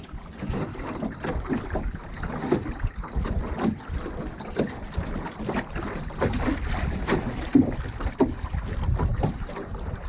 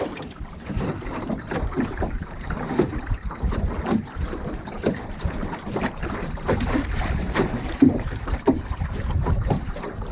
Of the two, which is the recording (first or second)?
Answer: first